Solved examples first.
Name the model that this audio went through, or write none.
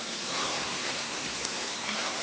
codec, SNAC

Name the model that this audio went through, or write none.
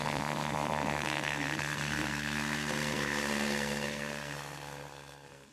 codec, SNAC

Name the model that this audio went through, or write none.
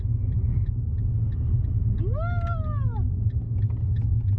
none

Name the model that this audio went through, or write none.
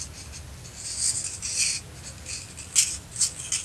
none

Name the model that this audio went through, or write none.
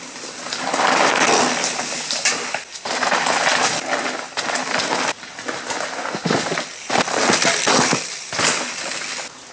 none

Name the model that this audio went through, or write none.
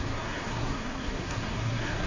codec, SNAC